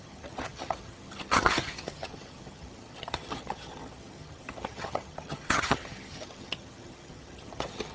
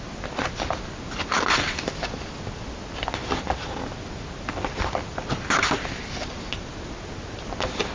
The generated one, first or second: first